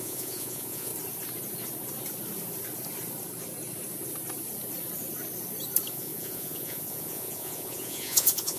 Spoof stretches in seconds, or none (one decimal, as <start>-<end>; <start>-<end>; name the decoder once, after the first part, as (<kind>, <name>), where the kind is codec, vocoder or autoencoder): 0.0-0.9 (vocoder, Vocos); 5.9-8.6